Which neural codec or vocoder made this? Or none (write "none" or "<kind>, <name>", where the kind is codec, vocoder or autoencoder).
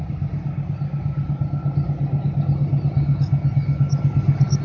none